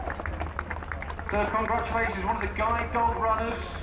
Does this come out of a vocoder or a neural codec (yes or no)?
no